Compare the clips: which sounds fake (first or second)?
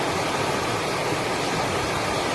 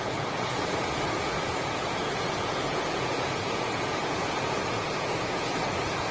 second